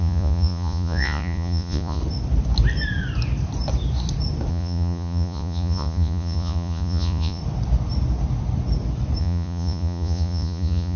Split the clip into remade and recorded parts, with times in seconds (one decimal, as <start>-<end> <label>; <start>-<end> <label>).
0.0-2.0 remade; 2.0-4.5 recorded; 4.5-7.4 remade; 7.4-9.2 recorded; 9.2-11.0 remade